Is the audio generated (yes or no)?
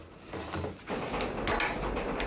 no